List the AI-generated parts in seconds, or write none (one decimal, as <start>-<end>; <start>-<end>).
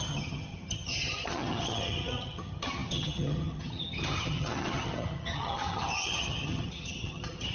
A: 0.0-7.5